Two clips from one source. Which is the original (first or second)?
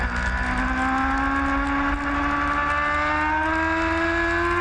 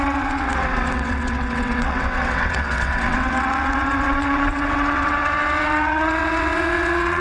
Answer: first